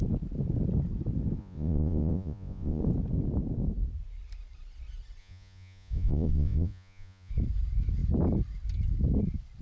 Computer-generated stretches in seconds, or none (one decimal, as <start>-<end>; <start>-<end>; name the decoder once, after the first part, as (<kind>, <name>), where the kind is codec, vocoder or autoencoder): 1.4-2.8 (vocoder, Vocos); 5.2-7.3